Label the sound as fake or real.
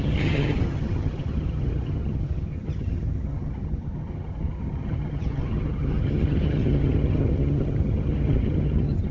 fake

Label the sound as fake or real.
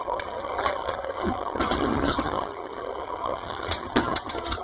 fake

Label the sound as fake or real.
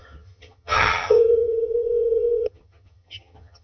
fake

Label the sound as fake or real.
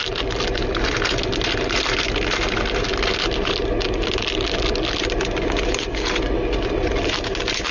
real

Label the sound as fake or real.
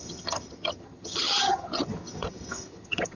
fake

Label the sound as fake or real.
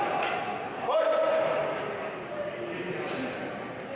real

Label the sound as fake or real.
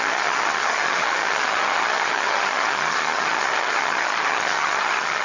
fake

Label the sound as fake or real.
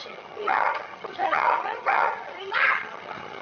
fake